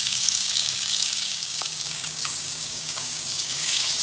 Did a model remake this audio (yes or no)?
yes